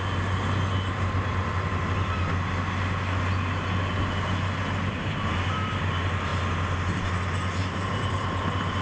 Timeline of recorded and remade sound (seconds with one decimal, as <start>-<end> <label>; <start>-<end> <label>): 0.0-8.8 recorded